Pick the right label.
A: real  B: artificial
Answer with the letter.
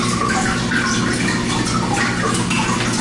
A